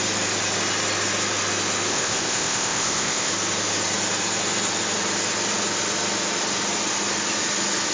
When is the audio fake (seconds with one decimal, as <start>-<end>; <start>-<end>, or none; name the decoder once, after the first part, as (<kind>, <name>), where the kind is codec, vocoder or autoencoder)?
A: 1.9-3.3 (codec, ZipCodec)